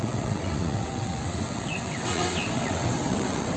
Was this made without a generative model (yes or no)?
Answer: no